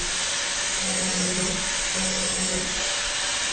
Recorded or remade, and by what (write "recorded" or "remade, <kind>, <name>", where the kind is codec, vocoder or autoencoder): recorded